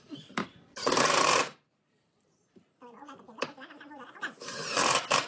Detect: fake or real fake